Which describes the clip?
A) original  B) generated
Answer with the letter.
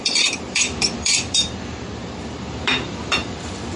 B